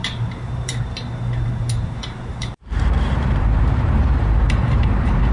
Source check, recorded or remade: remade